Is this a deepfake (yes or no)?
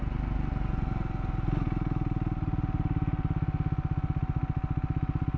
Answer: no